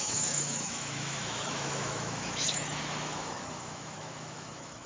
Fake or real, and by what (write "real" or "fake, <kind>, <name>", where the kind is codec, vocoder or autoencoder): fake, autoencoder, DAC-VAE